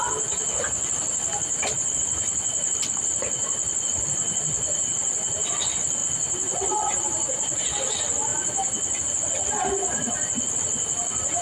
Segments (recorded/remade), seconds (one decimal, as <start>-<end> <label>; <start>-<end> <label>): 0.0-11.4 recorded